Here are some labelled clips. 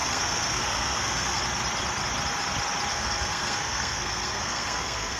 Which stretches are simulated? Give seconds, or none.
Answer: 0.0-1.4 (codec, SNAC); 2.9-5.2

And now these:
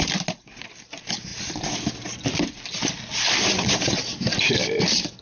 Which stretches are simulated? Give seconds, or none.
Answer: none

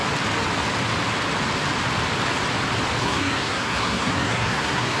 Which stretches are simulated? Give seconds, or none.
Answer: 3.0-5.0 (codec, SNAC)